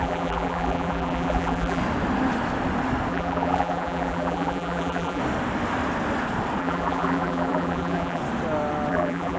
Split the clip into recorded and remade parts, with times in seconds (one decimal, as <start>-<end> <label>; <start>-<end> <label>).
0.0-1.8 remade; 1.8-3.1 recorded; 3.1-5.2 remade; 5.2-6.6 recorded; 6.6-8.2 remade; 8.2-8.9 recorded; 8.9-9.4 remade